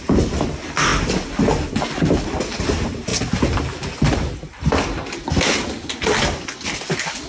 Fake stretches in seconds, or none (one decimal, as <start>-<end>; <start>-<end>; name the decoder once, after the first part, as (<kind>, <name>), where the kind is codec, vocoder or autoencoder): 0.0-0.9 (vocoder, BigVGAN v2); 2.6-3.1; 6.2-7.3